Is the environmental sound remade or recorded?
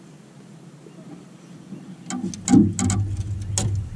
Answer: recorded